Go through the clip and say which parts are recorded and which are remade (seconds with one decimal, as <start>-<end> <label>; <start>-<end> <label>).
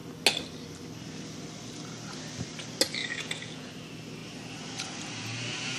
0.0-3.0 recorded; 3.0-3.7 remade; 3.7-5.8 recorded